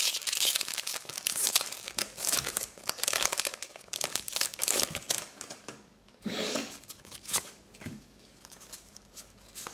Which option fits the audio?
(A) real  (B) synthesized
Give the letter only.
B